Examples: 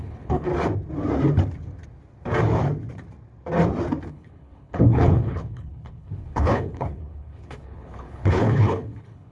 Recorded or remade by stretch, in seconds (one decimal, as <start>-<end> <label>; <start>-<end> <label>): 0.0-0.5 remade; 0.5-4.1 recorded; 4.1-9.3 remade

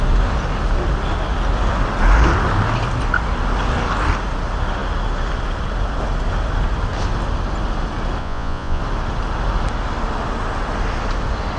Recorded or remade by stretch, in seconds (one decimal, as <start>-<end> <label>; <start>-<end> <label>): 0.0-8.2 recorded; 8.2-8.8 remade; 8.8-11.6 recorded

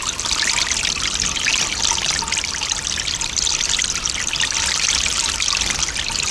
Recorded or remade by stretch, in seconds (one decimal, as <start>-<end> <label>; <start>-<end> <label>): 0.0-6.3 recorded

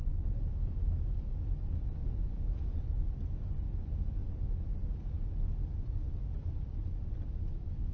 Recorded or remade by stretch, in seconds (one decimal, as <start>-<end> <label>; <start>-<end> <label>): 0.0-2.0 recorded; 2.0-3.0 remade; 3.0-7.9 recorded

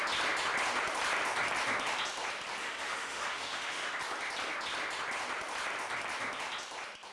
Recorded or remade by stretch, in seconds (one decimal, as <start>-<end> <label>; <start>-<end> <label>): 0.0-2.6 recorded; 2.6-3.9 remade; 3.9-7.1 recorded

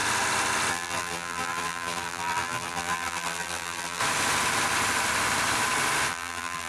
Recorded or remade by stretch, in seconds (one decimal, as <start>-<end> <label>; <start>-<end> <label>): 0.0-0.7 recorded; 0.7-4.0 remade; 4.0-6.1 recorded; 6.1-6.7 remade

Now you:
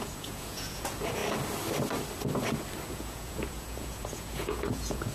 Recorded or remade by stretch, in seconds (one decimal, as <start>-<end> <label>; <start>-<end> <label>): 0.0-1.2 remade; 1.2-2.9 recorded; 2.9-5.1 remade

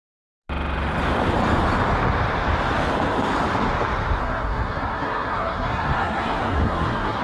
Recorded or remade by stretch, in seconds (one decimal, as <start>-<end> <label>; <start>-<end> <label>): 0.0-4.2 recorded; 4.2-7.2 remade